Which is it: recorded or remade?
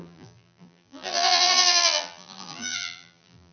remade